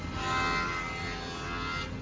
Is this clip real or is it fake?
real